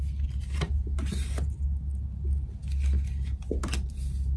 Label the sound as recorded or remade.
recorded